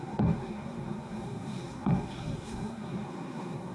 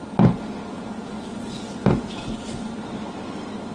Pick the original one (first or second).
second